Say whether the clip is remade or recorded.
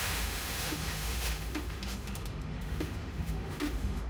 remade